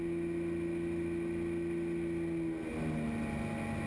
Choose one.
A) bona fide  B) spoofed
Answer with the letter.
A